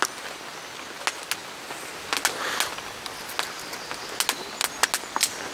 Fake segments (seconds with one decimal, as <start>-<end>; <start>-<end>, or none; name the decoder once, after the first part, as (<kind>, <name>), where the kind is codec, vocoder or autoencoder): none